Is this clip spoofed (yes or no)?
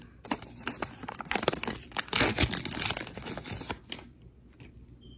no